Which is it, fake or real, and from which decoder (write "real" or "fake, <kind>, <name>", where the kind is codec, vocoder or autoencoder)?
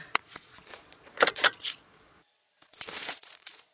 fake, vocoder, Vocos